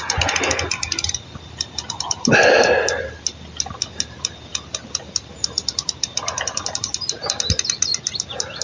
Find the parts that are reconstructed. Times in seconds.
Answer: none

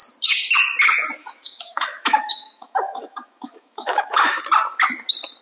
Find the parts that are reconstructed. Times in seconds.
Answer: 1.2-4.4 (autoencoder, DAC-VAE)

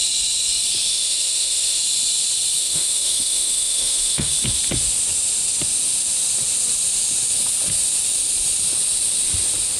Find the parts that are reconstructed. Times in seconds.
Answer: 0.9-1.8 (autoencoder, DAC-VAE); 2.6-4.3

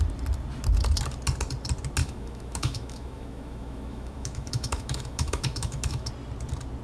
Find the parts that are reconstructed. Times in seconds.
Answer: 2.0-6.1 (autoencoder, DAC-VAE)

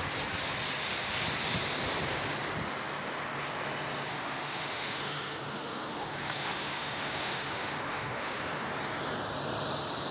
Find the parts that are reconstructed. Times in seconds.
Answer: 4.1-8.7 (autoencoder, DAC-VAE)